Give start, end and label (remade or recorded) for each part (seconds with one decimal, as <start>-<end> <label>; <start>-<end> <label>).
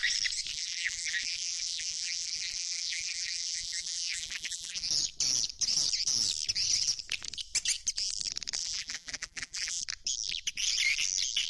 0.0-0.5 recorded; 0.5-4.9 remade; 4.9-8.6 recorded; 8.6-9.8 remade; 9.8-11.5 recorded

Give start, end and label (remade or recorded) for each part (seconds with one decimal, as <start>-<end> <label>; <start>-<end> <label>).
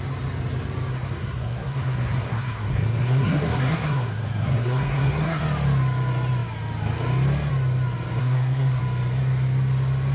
0.0-0.9 recorded; 0.9-5.4 remade; 5.4-8.2 recorded; 8.2-8.8 remade; 8.8-10.1 recorded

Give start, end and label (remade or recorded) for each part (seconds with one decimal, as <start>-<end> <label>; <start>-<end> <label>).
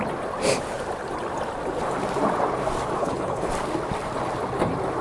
0.0-3.0 recorded; 3.0-3.5 remade; 3.5-5.0 recorded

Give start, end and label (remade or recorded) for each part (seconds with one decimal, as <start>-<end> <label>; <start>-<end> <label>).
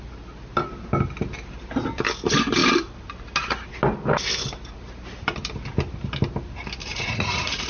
0.0-6.8 recorded; 6.8-7.7 remade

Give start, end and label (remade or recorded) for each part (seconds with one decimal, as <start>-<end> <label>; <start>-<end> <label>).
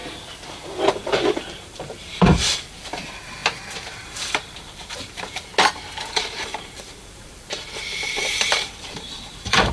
0.0-0.9 recorded; 0.9-3.4 remade; 3.4-3.9 recorded; 3.9-5.5 remade; 5.5-6.1 recorded; 6.1-9.7 remade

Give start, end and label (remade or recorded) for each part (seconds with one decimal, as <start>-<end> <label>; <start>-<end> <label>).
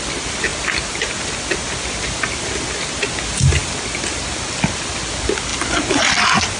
0.0-6.6 recorded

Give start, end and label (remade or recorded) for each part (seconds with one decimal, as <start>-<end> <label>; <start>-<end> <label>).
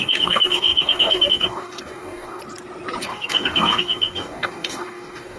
0.0-2.4 remade; 2.4-3.0 recorded; 3.0-5.4 remade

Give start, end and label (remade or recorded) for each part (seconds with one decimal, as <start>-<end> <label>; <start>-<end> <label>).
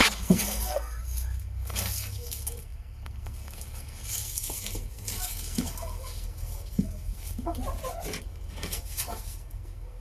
0.0-7.6 remade; 7.6-8.2 recorded; 8.2-10.0 remade